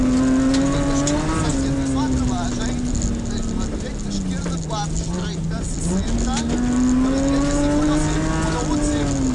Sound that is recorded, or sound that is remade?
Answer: recorded